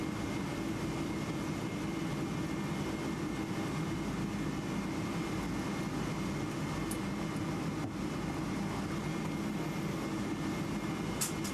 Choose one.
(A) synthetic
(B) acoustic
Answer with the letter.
B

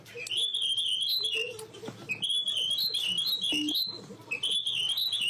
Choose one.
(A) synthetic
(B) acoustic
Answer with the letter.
B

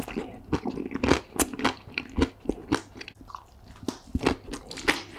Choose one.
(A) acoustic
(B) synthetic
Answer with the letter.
A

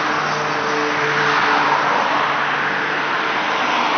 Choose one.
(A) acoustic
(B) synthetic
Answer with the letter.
A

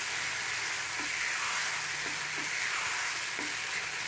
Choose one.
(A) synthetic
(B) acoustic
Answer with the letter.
B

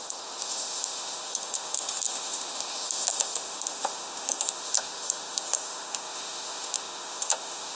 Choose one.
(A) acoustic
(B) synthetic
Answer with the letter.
B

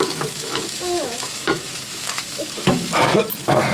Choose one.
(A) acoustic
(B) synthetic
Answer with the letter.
B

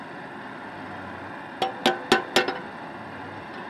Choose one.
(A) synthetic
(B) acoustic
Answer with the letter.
B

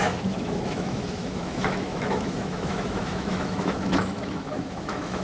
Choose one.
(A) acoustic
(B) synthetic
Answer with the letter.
B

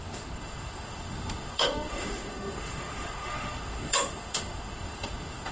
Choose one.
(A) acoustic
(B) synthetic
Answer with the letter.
B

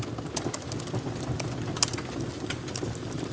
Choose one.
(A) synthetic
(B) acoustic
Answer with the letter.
B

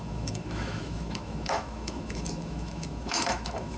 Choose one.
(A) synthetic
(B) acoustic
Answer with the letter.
A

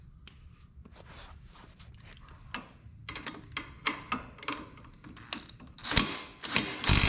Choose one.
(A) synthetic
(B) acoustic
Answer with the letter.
B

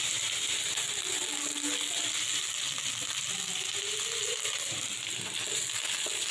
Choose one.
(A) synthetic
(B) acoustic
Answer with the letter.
B